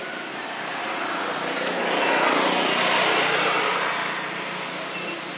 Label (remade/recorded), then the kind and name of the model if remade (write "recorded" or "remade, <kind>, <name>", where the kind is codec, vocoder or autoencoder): recorded